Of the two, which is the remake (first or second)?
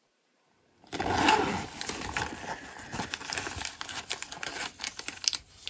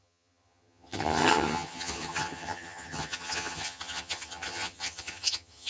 second